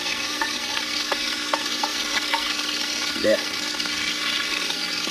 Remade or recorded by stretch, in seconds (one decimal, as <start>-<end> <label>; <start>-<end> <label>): 0.0-5.1 remade